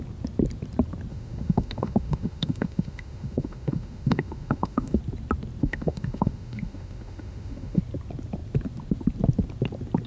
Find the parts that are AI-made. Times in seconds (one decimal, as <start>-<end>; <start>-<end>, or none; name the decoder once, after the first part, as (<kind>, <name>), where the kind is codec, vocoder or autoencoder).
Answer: 1.1-5.0 (autoencoder, DAC-VAE); 5.6-7.8